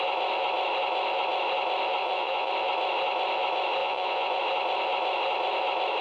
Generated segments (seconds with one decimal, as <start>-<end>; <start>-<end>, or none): 2.0-2.5; 3.8-4.4